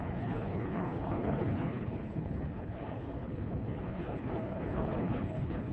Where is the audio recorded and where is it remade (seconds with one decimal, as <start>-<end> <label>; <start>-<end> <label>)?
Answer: 0.0-5.7 remade